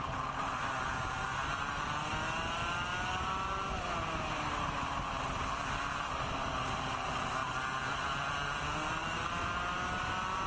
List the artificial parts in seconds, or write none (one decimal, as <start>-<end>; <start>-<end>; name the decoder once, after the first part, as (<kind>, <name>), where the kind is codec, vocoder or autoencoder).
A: none